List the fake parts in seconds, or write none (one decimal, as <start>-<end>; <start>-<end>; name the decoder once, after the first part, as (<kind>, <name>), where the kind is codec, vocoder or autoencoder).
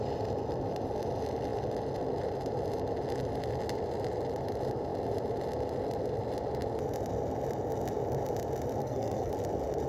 8.8-9.3 (codec, SNAC)